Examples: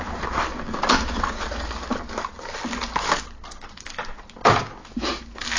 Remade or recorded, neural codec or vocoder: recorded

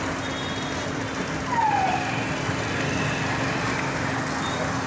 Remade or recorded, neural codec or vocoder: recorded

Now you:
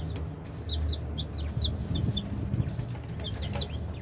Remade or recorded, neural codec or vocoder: recorded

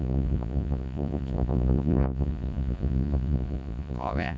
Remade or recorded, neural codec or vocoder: remade, vocoder, Vocos